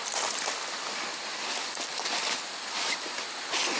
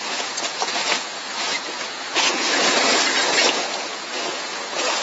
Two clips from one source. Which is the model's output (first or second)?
second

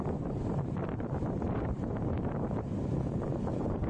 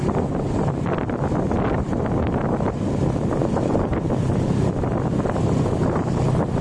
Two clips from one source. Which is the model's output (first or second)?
first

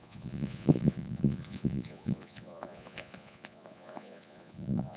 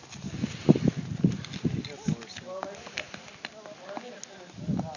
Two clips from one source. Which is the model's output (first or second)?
first